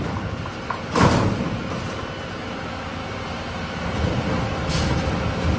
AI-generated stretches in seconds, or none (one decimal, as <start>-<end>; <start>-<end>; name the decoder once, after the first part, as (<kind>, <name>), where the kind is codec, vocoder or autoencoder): none